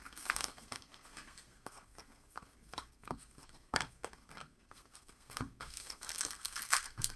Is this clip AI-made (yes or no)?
yes